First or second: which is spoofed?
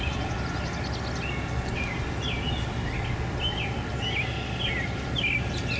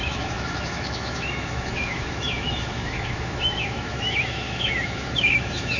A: second